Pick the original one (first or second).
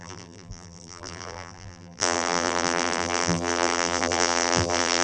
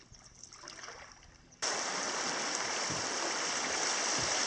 second